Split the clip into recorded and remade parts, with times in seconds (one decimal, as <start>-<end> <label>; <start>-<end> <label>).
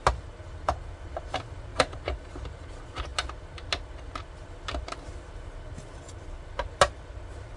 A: 0.0-1.7 recorded; 1.7-2.3 remade; 2.3-7.6 recorded